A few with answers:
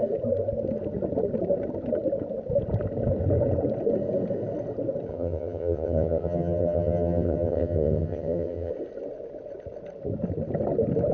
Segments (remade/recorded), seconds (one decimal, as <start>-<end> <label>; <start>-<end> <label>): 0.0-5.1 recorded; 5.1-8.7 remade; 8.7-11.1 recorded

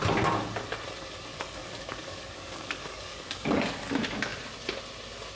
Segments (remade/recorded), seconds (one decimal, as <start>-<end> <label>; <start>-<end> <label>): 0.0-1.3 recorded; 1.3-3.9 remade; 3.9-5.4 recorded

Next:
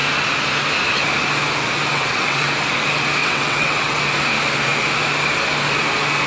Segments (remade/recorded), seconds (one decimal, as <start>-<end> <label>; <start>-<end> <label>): 0.0-1.9 recorded; 1.9-2.5 remade; 2.5-3.2 recorded; 3.2-4.0 remade; 4.0-6.3 recorded

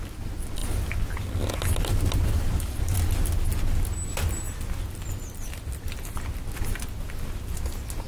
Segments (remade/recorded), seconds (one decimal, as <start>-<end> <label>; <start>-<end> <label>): 0.0-8.1 recorded

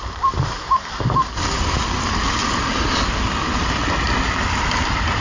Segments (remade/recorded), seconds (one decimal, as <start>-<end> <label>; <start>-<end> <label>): 0.0-5.2 recorded